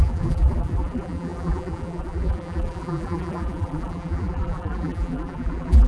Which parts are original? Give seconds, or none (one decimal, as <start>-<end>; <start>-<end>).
none